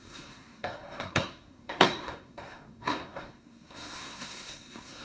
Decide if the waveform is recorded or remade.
remade